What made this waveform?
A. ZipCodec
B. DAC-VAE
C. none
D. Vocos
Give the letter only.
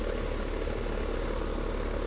C